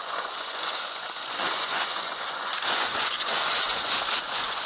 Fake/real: fake